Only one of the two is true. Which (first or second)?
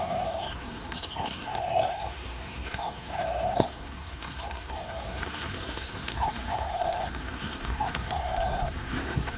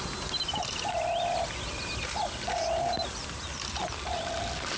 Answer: second